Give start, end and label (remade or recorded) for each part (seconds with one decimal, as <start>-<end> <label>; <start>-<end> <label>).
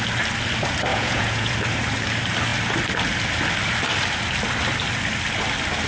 0.0-0.9 recorded; 0.9-1.5 remade; 1.5-5.9 recorded